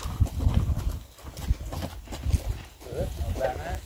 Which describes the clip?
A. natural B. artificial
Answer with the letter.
A